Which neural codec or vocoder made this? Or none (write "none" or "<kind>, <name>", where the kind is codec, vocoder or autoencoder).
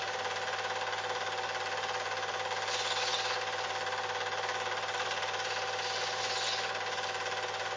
none